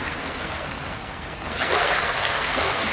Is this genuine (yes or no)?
no